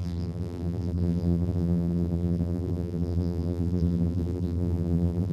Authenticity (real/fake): fake